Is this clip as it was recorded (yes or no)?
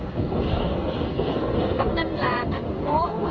no